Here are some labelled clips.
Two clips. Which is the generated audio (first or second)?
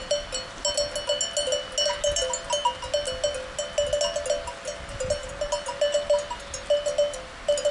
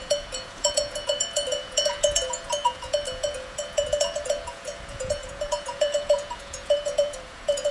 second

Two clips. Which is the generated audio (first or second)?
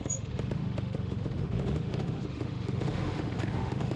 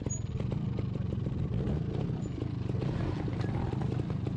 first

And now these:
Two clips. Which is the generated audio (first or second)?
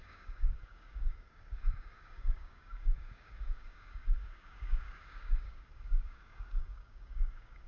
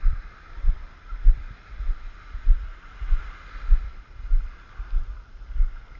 first